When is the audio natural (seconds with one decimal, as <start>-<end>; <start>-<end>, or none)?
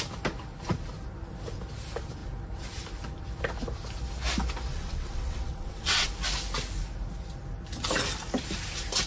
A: 0.0-4.7; 6.1-9.1